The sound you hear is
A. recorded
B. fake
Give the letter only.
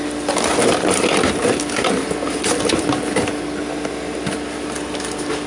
A